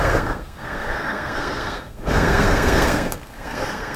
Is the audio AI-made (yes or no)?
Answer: yes